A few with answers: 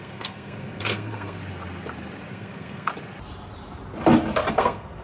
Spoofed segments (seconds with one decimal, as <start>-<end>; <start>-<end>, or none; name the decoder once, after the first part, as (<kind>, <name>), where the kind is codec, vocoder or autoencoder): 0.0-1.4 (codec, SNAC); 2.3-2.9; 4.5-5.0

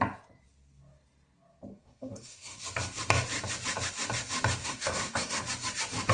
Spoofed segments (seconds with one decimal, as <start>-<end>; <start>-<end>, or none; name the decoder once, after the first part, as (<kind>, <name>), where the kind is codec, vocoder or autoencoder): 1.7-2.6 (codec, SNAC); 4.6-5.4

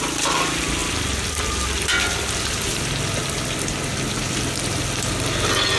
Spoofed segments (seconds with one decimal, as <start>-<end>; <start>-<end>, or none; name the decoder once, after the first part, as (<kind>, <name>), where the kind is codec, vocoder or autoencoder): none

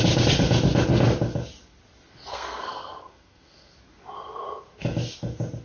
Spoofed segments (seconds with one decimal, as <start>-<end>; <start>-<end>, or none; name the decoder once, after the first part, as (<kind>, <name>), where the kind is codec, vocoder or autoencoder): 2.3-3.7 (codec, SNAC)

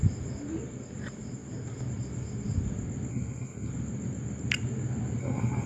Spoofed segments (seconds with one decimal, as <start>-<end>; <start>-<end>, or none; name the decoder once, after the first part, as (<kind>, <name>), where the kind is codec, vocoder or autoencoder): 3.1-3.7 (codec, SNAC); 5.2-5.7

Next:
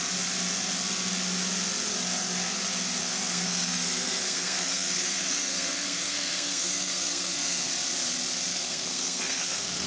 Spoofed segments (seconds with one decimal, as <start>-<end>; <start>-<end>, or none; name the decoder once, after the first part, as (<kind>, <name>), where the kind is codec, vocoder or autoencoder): 3.0-7.7 (codec, SNAC); 8.5-9.9

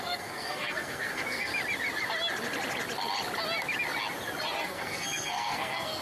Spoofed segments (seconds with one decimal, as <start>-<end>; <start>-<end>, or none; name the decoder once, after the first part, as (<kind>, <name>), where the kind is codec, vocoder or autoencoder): 0.0-1.5 (codec, SNAC); 4.6-6.0